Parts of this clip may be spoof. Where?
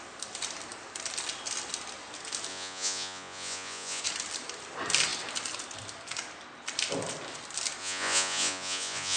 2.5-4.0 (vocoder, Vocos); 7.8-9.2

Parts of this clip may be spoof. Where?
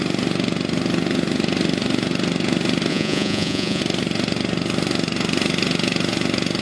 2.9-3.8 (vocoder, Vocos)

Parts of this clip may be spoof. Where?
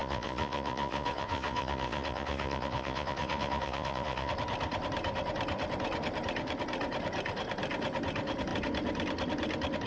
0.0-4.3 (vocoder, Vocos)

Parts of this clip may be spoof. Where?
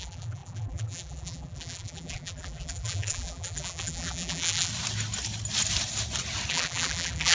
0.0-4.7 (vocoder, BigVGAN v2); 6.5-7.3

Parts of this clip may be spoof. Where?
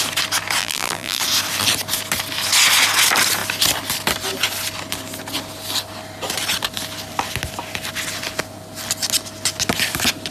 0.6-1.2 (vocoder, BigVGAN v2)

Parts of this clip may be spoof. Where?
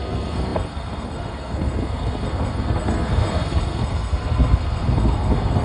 0.0-5.6 (codec, SNAC)